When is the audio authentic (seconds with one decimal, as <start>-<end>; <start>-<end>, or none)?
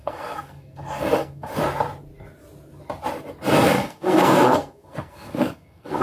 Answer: 1.5-3.5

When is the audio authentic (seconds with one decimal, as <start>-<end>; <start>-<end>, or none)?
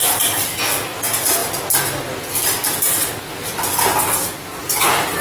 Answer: 0.0-5.2